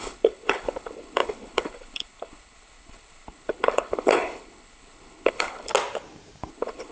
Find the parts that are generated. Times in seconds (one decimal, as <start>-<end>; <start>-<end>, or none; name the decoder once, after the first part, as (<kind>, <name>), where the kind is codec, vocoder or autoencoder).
0.0-5.7 (codec, HILCodec); 6.5-6.9